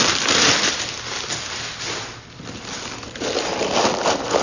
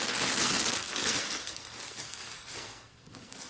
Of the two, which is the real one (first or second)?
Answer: first